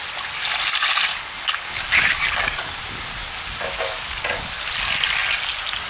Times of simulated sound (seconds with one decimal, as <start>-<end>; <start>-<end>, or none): 1.1-2.8; 3.2-4.7